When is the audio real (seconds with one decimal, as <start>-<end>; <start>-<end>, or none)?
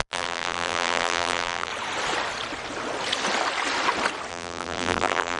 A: 1.7-4.3